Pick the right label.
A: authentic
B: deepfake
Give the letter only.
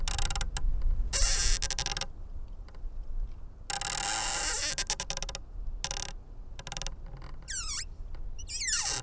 A